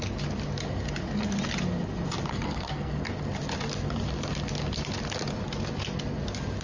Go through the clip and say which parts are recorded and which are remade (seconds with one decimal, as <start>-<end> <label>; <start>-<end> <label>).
0.0-2.3 recorded; 2.3-2.9 remade; 2.9-6.6 recorded